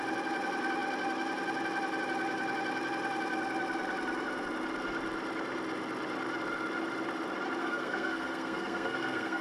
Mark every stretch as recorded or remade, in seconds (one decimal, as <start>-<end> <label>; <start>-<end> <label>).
0.0-7.6 recorded; 7.6-9.4 remade

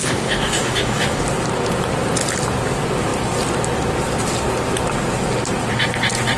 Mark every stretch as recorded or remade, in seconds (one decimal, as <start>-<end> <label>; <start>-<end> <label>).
0.0-1.2 remade; 1.2-6.4 recorded

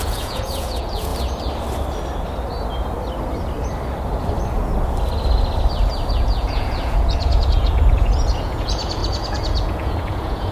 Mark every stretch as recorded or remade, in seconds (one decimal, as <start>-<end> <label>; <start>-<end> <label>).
0.0-1.1 remade; 1.1-6.1 recorded; 6.1-10.5 remade

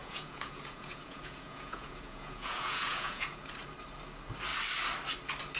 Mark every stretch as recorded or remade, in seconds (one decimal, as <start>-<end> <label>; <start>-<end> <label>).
0.0-3.4 remade; 3.4-5.6 recorded

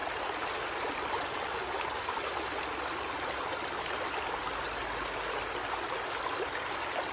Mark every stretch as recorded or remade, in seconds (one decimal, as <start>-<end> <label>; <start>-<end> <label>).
0.0-7.1 recorded

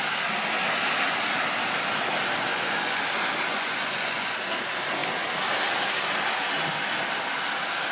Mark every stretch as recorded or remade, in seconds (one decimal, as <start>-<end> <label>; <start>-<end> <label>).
0.0-2.5 recorded; 2.5-3.0 remade; 3.0-3.5 recorded; 3.5-4.3 remade; 4.3-7.9 recorded